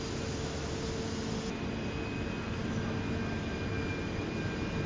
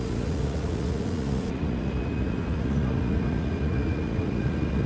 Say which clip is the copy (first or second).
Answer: second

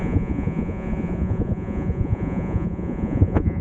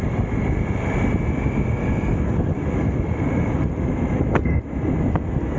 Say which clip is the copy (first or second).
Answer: first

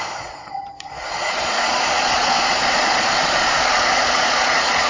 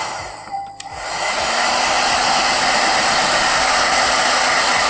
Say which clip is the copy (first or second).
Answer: first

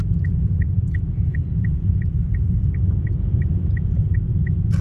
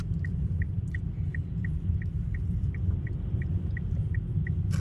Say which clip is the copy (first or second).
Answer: first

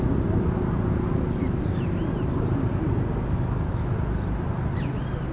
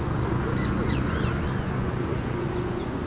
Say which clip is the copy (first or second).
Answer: second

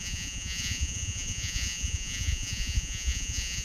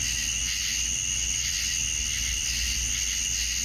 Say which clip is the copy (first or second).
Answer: first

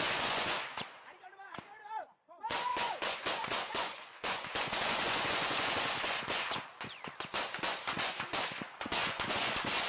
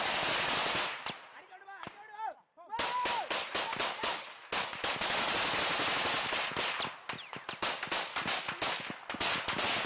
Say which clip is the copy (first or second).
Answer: first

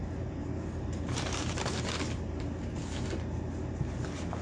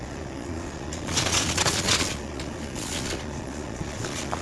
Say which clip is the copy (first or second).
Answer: second